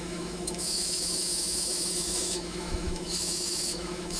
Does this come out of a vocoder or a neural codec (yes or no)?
yes